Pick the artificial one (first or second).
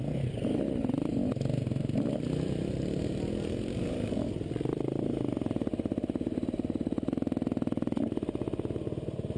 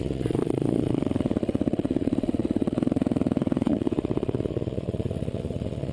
second